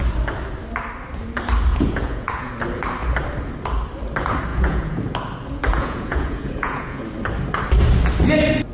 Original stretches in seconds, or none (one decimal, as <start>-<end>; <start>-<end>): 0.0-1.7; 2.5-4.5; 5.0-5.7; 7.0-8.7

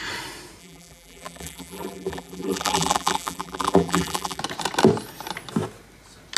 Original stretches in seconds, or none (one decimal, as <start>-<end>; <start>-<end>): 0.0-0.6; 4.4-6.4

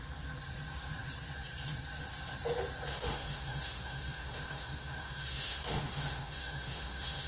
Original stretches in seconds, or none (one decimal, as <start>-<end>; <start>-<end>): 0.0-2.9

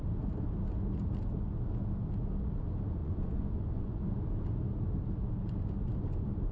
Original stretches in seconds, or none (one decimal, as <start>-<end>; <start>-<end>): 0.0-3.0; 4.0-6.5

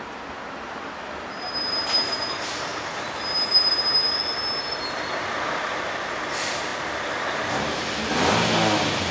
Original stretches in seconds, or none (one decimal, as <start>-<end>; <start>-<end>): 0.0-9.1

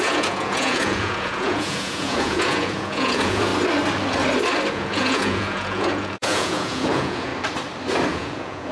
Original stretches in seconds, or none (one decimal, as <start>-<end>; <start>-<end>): 3.5-4.7; 7.3-8.1

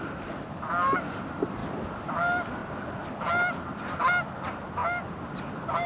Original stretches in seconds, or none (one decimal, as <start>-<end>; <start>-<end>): 0.0-5.9

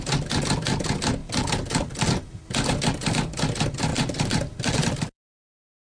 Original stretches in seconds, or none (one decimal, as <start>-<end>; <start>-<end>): 0.0-1.2; 2.2-3.9; 5.5-5.9